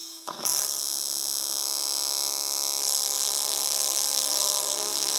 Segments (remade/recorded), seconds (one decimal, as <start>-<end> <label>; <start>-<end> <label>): 0.0-0.8 remade; 0.8-2.8 recorded; 2.8-5.2 remade